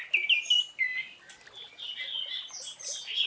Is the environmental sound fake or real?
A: real